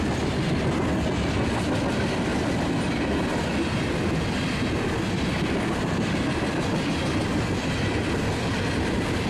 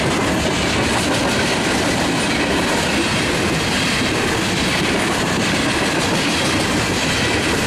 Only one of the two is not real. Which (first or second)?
second